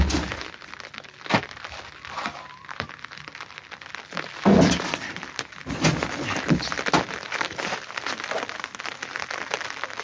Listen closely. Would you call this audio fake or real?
real